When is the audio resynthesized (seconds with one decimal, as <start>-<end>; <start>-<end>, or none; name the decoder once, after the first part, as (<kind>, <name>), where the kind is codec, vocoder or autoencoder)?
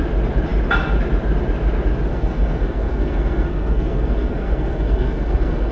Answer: 2.1-5.7 (codec, SNAC)